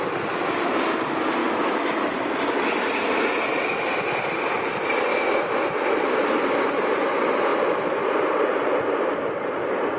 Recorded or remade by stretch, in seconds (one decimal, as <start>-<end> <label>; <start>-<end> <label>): 0.0-1.4 recorded; 1.4-3.8 remade; 3.8-10.0 recorded